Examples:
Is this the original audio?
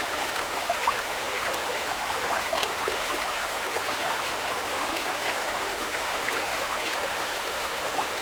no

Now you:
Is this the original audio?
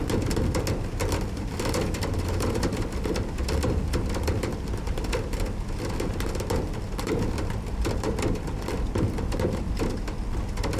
yes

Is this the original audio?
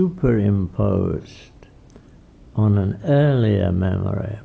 yes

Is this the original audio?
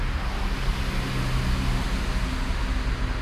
yes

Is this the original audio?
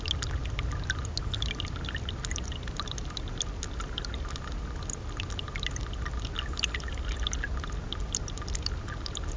yes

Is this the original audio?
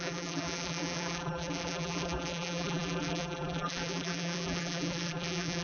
no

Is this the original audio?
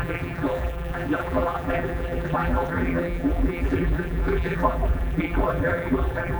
no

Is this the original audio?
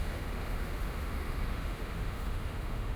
no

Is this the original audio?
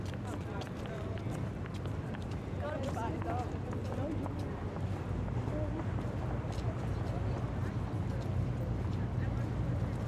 yes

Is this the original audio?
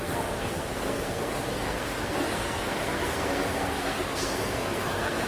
no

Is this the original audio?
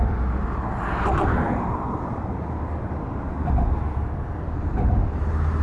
yes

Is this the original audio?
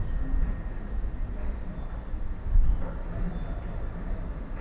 yes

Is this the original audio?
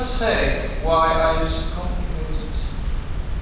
yes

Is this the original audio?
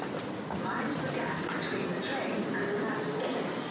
yes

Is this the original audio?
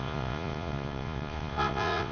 no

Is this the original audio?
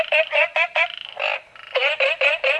yes